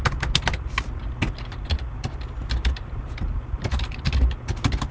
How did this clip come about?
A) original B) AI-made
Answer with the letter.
A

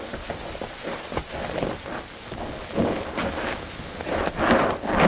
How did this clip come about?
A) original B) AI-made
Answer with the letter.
A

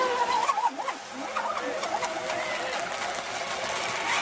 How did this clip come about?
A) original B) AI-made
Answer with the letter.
A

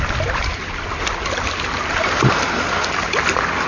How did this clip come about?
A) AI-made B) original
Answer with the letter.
B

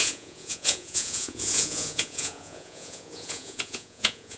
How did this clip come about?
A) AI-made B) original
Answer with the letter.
A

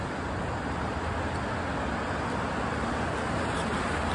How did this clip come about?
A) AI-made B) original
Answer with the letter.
B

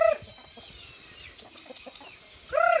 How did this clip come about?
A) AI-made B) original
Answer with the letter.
B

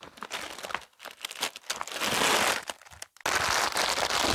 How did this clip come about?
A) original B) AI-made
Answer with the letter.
A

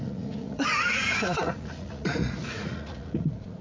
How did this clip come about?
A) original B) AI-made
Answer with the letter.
B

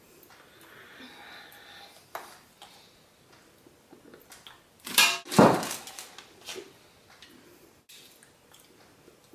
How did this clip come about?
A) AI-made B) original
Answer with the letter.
B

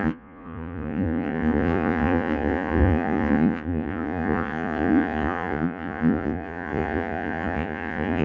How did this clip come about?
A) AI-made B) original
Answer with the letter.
A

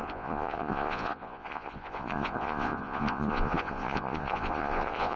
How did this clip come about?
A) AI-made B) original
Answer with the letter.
A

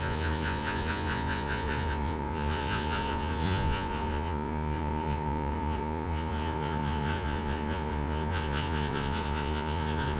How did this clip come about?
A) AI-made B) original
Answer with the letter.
A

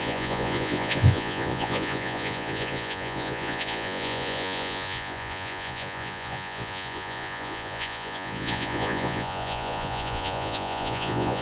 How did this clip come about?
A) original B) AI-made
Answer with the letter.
B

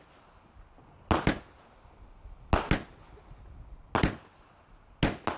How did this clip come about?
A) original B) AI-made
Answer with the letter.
A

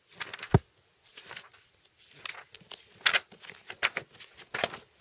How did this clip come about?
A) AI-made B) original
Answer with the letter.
B